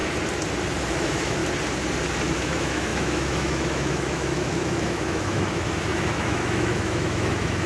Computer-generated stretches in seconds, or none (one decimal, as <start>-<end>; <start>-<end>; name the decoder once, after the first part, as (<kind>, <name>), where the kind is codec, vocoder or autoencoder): 0.9-1.4 (autoencoder, DAC-VAE); 2.4-7.7